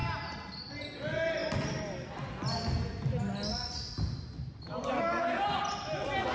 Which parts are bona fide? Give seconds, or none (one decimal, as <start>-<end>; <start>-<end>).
0.0-6.3